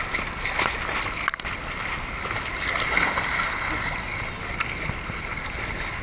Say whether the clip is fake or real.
real